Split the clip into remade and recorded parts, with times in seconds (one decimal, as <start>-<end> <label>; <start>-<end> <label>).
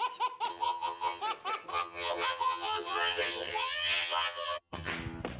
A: 0.0-0.5 recorded; 0.5-1.2 remade; 1.2-1.7 recorded; 1.7-4.9 remade; 4.9-5.4 recorded